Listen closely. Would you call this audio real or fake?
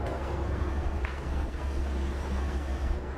fake